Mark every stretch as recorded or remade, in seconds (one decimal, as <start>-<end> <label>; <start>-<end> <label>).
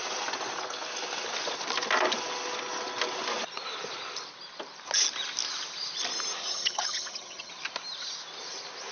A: 0.0-6.4 recorded; 6.4-7.5 remade; 7.5-8.9 recorded